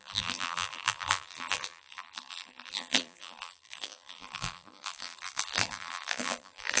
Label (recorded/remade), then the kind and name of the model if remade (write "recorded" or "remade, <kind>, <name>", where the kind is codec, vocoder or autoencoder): remade, vocoder, BigVGAN v2